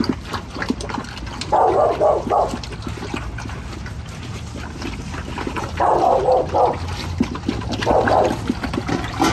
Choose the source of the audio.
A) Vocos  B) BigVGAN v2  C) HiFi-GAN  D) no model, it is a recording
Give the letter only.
D